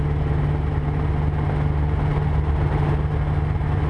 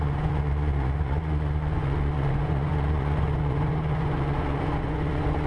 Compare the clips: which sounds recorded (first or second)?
first